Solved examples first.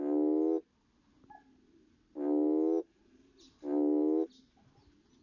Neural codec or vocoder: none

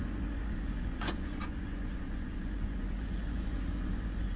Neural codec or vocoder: vocoder, Vocos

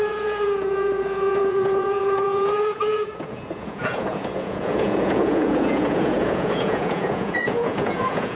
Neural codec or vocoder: vocoder, Vocos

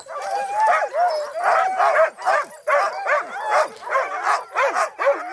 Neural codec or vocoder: none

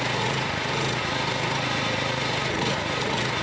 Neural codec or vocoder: vocoder, Vocos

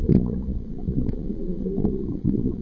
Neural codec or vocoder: vocoder, Vocos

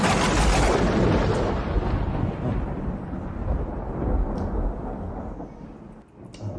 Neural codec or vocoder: none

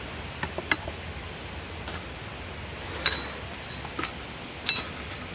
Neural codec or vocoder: none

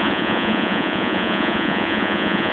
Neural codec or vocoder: vocoder, Vocos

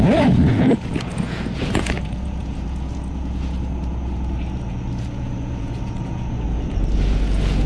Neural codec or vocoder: vocoder, Vocos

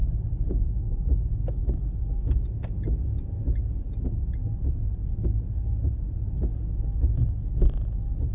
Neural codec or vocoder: none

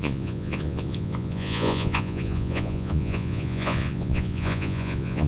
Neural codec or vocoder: vocoder, Vocos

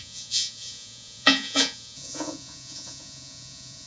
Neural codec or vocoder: vocoder, Vocos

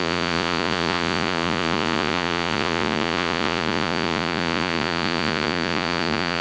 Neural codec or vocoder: vocoder, Vocos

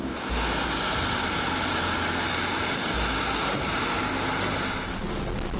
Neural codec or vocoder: none